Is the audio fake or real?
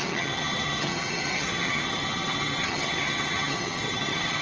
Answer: fake